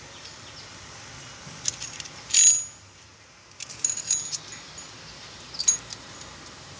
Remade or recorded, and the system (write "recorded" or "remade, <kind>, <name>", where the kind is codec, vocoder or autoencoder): recorded